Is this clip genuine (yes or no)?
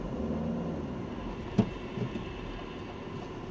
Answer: yes